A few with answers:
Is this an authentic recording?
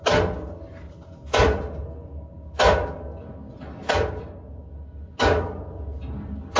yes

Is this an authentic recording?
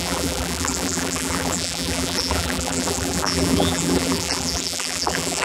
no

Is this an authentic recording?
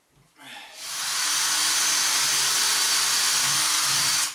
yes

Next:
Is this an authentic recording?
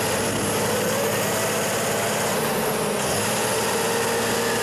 yes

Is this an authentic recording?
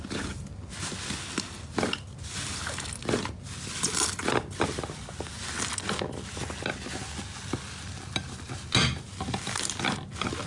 yes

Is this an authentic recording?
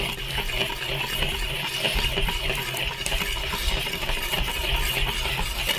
yes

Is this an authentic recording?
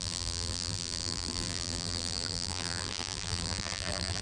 no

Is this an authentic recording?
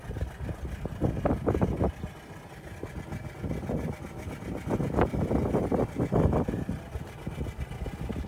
yes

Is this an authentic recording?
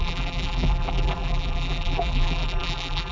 no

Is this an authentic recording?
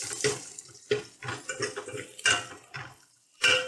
no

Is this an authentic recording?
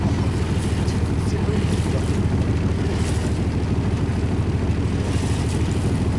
yes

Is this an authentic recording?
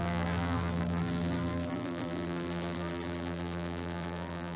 no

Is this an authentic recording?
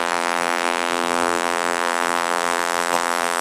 no